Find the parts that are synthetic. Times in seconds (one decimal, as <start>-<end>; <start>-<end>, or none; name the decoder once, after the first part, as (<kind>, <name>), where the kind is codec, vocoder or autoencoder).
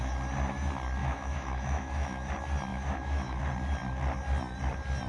1.0-2.3 (autoencoder, DAC-VAE); 2.7-3.4